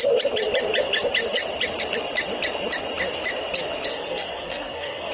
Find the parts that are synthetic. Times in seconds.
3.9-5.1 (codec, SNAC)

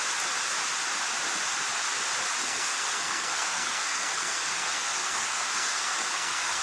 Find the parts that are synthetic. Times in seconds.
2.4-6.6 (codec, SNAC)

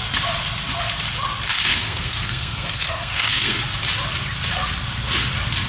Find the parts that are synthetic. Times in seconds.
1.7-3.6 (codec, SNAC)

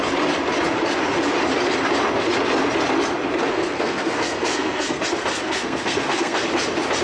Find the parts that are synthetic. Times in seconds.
3.5-5.0 (codec, SNAC); 5.4-6.4

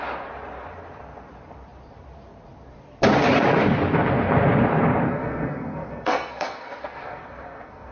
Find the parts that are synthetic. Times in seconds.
5.1-7.9 (codec, SNAC)

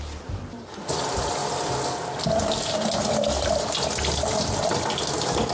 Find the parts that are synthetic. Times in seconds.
none